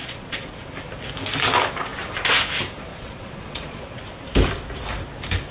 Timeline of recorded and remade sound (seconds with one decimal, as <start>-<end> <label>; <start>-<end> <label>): 0.0-0.5 remade; 0.5-2.9 recorded; 2.9-4.0 remade; 4.0-5.5 recorded